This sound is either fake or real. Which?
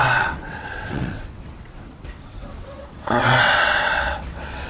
fake